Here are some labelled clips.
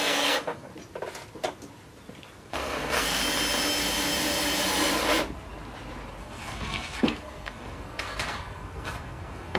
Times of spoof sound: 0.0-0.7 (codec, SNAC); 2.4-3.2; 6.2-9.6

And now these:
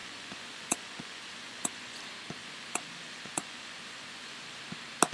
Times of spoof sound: 0.0-2.0 (vocoder, Vocos); 2.4-4.6

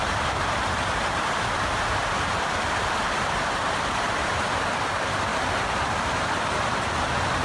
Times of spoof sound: 0.0-5.3 (vocoder, BigVGAN v2); 7.0-7.4

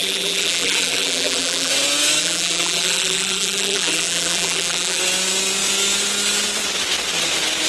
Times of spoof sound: 0.0-1.7 (vocoder, BigVGAN v2); 2.2-5.0

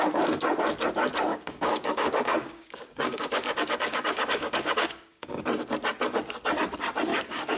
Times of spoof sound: 1.3-5.4 (codec, DAC); 7.1-7.6

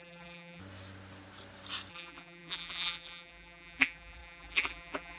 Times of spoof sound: 0.0-0.6 (vocoder, BigVGAN v2); 1.9-5.2